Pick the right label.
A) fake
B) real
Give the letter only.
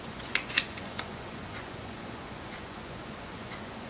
A